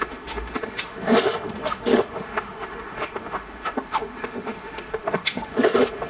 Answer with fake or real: fake